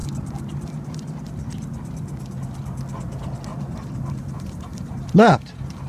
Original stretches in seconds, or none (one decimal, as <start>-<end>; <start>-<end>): 1.2-3.5